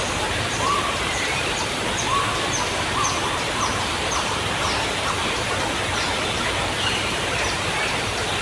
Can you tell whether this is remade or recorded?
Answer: remade